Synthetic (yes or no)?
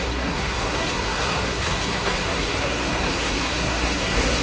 yes